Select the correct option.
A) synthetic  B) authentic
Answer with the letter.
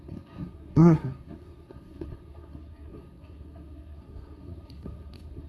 A